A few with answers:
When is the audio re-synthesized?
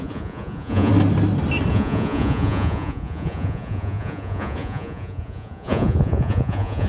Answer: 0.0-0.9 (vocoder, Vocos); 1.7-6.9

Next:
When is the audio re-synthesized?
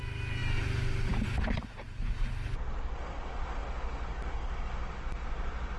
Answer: none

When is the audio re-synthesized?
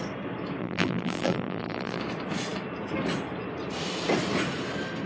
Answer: 0.6-2.0 (vocoder, BigVGAN v2)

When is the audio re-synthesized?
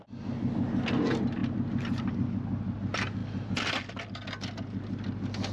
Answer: none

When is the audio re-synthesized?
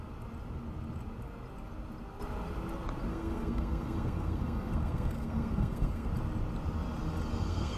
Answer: 3.1-6.1 (codec, SNAC); 7.3-7.8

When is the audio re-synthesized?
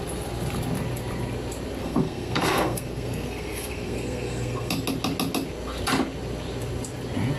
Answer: 1.8-4.7 (codec, SNAC)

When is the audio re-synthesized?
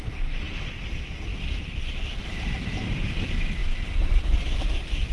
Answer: none